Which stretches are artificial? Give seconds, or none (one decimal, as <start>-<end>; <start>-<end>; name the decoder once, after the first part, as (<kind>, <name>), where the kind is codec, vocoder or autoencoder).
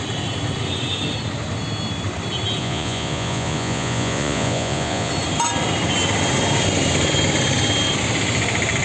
2.6-5.1 (vocoder, Vocos)